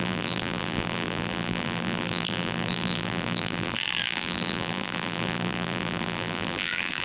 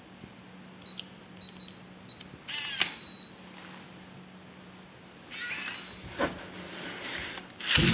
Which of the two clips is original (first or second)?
second